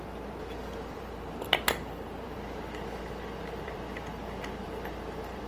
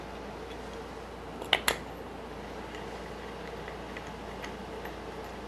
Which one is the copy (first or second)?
first